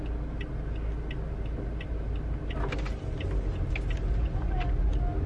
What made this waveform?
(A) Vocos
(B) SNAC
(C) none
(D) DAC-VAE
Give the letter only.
C